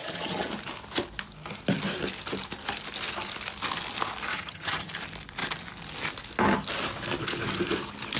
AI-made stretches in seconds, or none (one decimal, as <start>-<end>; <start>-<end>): 0.0-0.5; 4.3-4.9